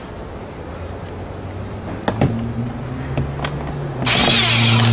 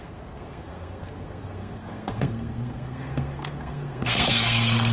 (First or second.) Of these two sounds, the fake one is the second